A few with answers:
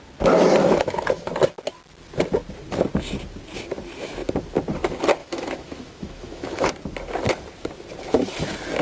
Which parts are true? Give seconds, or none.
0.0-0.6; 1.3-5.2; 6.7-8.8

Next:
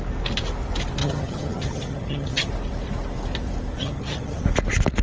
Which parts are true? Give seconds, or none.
0.0-1.0; 2.5-3.8; 4.4-5.0

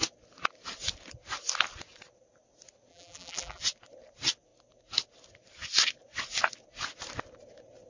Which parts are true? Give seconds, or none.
0.0-2.9; 3.6-7.9

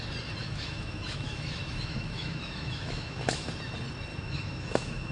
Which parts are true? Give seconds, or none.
0.0-0.4; 3.5-4.1

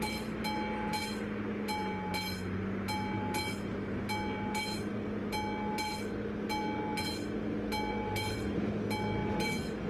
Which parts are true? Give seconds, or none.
0.0-9.9

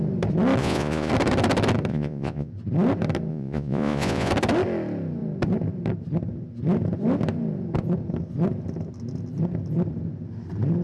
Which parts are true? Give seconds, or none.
0.0-0.6; 1.1-1.9; 2.5-3.3; 4.3-10.8

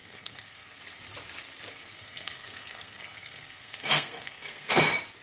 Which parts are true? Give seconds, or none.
0.8-1.7; 4.8-5.2

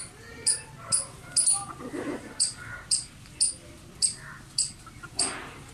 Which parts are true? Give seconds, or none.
0.0-5.7